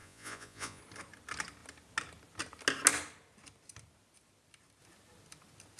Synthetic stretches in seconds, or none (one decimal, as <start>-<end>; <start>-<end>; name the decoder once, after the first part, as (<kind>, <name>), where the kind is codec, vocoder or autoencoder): 0.0-0.8 (vocoder, Vocos)